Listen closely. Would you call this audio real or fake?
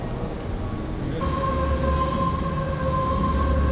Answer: real